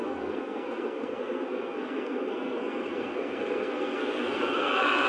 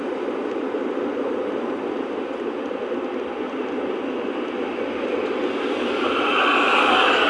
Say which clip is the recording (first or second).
second